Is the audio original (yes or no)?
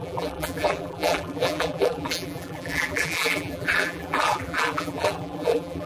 no